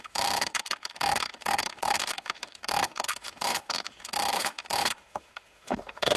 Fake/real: fake